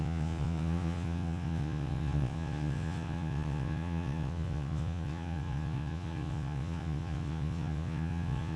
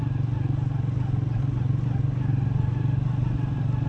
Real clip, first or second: second